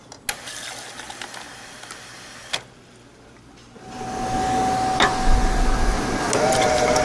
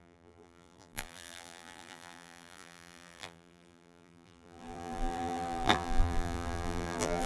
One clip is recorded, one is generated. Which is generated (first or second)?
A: second